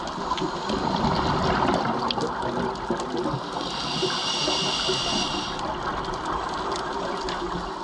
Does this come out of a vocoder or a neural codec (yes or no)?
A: no